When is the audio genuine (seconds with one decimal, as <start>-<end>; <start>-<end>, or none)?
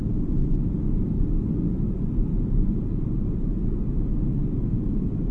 0.0-5.3